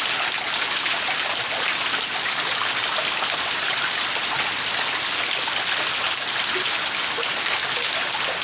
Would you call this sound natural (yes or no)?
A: yes